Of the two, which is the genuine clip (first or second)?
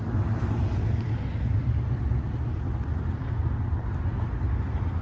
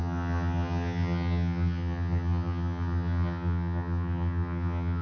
first